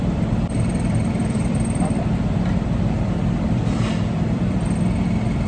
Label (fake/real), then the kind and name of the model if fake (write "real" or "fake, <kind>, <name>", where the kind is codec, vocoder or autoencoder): fake, vocoder, BigVGAN v2